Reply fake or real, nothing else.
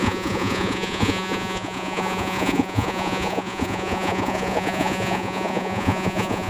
fake